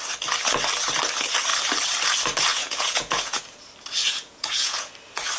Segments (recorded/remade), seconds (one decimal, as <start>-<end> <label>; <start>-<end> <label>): 0.0-2.5 recorded; 2.5-3.4 remade; 3.4-4.0 recorded; 4.0-4.9 remade; 4.9-5.4 recorded